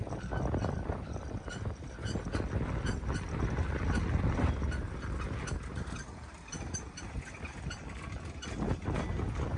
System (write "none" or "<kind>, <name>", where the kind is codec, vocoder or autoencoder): none